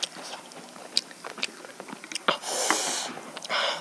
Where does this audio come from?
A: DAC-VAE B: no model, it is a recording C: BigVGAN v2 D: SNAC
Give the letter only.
B